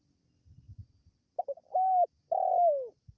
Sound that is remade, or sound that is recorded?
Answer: recorded